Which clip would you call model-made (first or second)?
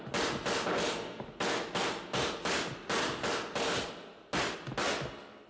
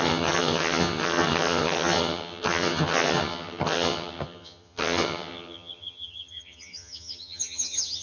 second